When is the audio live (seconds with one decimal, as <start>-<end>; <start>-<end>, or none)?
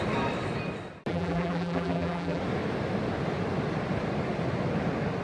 0.0-1.1; 2.4-5.2